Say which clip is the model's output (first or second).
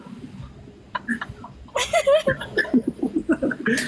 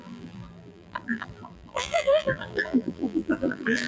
second